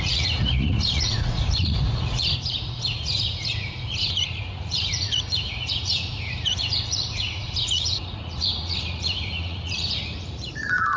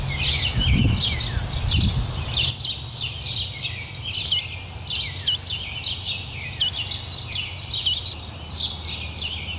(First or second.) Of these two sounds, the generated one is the first